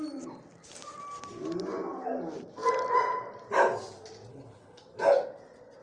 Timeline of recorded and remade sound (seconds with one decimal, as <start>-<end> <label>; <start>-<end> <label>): 0.0-4.3 recorded; 4.3-4.8 remade; 4.8-5.8 recorded